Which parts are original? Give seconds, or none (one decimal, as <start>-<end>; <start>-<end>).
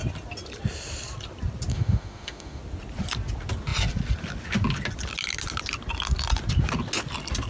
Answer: 0.0-1.7; 2.6-7.5